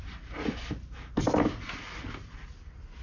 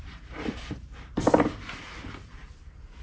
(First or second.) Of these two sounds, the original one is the first